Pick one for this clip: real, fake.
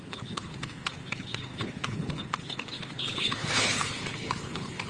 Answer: fake